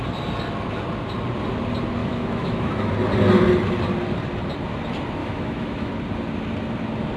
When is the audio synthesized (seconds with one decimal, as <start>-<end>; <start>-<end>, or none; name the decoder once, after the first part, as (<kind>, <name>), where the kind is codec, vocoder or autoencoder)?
2.0-2.9 (autoencoder, DAC-VAE); 5.2-5.9